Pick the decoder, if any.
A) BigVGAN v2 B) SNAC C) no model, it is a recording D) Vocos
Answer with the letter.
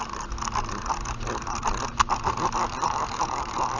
C